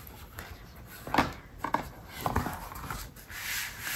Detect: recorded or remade recorded